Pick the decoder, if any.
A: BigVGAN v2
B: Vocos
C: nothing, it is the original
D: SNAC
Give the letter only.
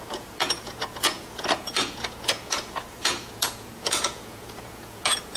B